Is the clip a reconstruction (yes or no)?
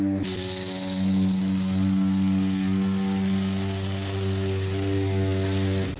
no